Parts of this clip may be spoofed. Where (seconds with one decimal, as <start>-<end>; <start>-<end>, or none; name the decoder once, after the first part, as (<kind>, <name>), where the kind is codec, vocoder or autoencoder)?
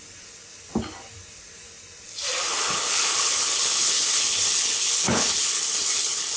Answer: 2.5-6.4 (codec, HILCodec)